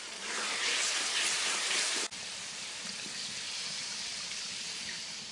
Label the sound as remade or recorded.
remade